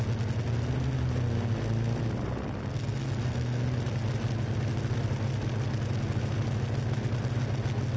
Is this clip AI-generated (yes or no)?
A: no